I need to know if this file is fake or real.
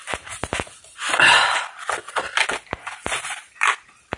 real